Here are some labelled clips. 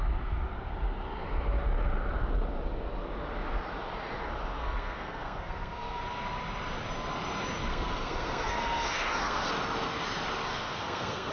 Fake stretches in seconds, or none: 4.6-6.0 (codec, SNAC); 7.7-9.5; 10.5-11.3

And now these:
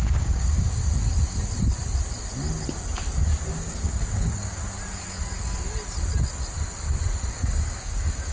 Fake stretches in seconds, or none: 0.0-0.8 (codec, DAC); 3.5-4.6; 7.3-8.3

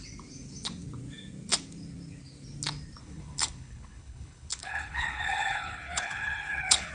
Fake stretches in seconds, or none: 3.0-6.9 (codec, HILCodec)

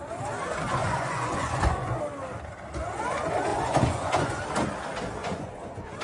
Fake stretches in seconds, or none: 0.8-2.0 (vocoder, Vocos); 3.5-4.4; 5.2-6.0

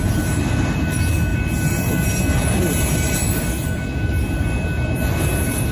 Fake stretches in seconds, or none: none

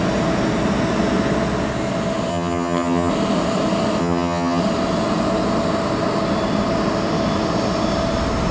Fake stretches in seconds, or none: 2.3-3.1 (vocoder, HiFi-GAN); 4.0-4.6

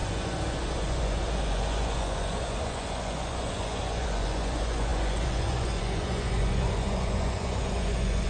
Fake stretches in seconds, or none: 0.0-8.3 (vocoder, Vocos)

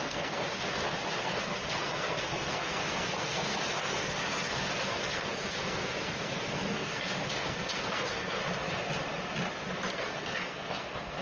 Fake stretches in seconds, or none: 0.0-0.4 (codec, SNAC); 1.2-8.4; 9.9-11.2